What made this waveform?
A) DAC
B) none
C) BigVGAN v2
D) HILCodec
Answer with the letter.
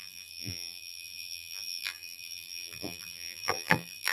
C